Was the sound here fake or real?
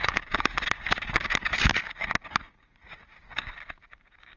fake